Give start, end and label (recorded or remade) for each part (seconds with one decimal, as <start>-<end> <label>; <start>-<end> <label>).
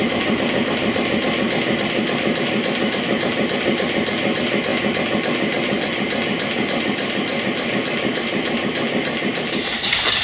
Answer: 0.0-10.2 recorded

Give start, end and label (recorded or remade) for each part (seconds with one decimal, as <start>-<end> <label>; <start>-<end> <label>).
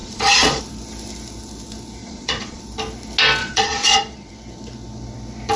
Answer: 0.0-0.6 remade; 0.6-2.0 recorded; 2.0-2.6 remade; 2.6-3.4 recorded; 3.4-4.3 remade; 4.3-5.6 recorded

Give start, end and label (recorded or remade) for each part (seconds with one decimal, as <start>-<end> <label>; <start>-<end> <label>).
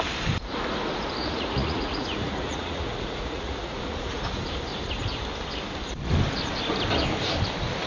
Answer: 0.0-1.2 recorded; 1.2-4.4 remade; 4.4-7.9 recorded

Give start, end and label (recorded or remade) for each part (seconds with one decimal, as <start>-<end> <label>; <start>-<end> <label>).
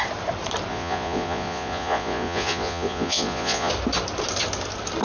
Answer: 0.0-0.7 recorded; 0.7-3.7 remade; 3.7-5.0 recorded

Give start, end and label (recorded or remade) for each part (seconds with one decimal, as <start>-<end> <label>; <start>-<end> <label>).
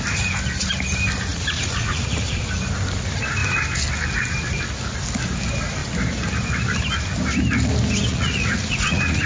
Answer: 0.0-1.3 recorded; 1.3-2.4 remade; 2.4-8.1 recorded; 8.1-9.3 remade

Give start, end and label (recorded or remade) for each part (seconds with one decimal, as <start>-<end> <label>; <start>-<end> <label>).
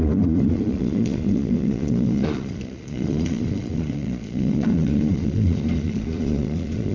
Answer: 0.0-6.9 remade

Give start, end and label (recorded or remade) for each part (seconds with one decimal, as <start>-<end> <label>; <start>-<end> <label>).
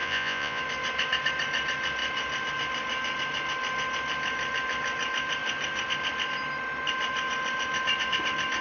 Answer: 0.0-0.6 remade; 0.6-8.6 recorded